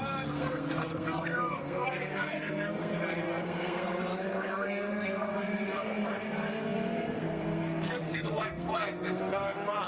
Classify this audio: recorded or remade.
remade